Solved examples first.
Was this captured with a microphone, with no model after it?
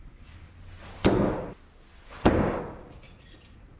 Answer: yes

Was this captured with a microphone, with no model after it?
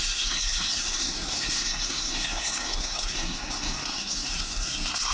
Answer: no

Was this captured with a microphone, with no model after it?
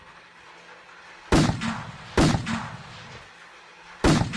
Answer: yes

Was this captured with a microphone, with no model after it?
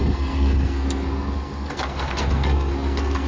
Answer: no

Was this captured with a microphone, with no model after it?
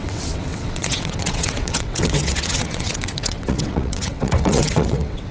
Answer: no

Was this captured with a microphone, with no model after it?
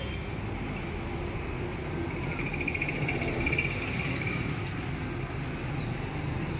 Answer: yes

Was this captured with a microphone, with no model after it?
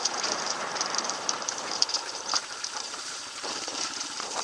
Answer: no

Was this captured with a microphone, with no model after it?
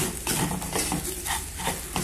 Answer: yes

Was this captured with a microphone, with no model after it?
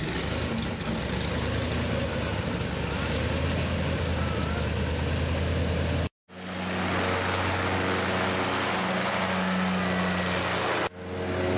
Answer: yes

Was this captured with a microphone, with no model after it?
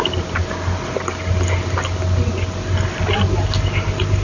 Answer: yes